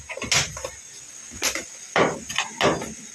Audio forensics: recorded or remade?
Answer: recorded